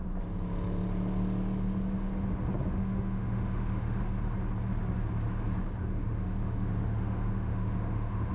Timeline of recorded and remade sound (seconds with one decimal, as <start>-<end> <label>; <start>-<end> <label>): 0.0-2.8 recorded; 2.8-4.0 remade; 4.0-5.8 recorded; 5.8-8.3 remade